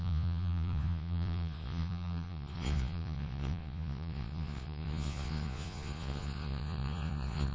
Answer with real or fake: fake